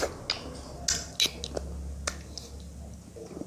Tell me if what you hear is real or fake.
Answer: real